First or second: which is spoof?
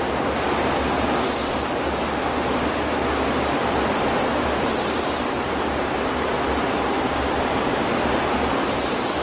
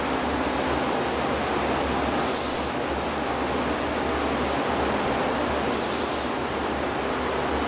first